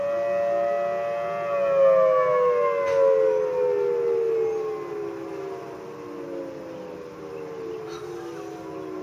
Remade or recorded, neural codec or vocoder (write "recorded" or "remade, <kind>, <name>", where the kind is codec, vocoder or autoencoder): recorded